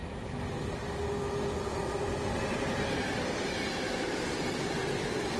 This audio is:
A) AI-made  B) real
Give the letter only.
B